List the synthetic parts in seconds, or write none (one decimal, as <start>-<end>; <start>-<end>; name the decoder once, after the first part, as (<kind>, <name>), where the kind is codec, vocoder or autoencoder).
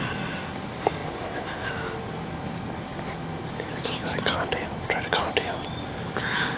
none